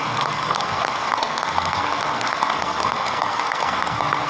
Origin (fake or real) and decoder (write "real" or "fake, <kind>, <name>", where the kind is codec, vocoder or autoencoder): fake, codec, SNAC